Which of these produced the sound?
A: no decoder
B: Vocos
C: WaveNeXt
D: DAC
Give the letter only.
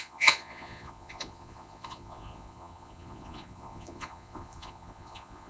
B